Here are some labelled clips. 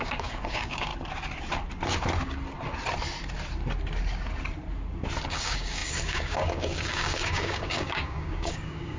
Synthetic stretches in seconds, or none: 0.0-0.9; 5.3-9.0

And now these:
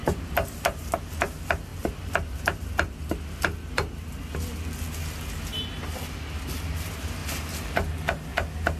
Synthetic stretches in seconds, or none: 0.0-0.9; 7.2-7.7

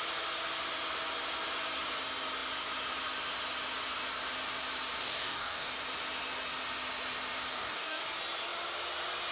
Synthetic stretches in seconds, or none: 5.0-5.7; 7.5-8.0

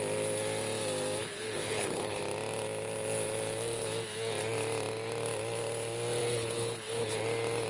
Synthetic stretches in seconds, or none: 1.2-2.2; 6.2-7.2

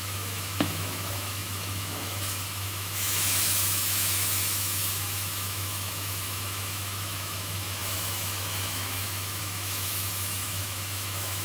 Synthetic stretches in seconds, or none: 0.0-11.4

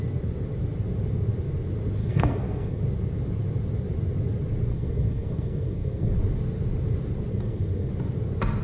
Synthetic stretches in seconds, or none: 2.0-2.8; 4.7-6.1; 7.3-7.9

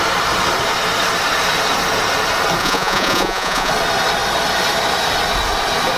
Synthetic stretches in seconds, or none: 2.6-3.7